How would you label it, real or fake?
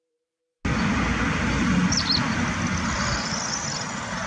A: real